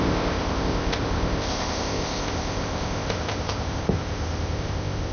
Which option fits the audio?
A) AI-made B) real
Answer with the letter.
A